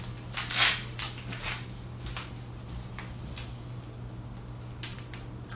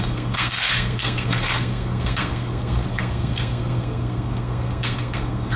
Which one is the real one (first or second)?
first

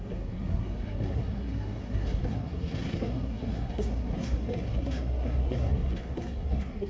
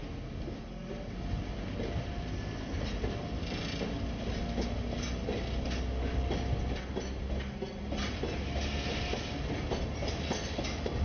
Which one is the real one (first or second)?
second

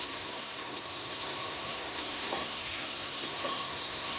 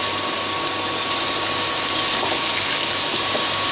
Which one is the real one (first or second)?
second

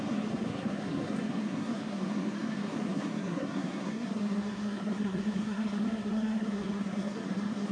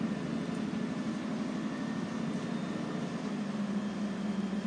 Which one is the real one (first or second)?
second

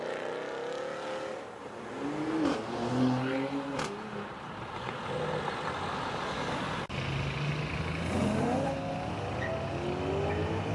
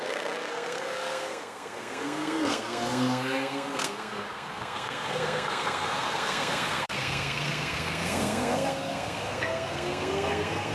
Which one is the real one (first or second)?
first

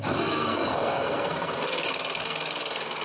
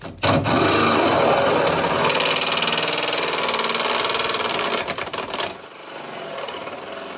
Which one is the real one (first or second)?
second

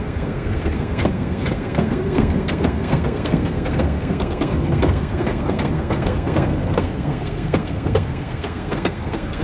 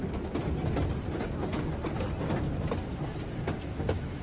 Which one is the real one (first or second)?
second